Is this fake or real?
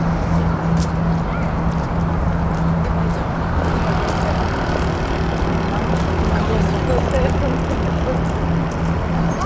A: real